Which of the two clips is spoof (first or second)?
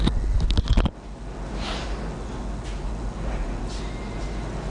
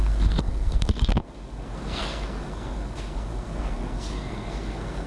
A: second